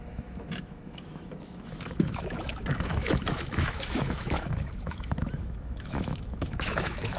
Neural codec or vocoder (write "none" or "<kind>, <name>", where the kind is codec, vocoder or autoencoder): autoencoder, DAC-VAE